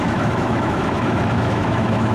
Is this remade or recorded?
remade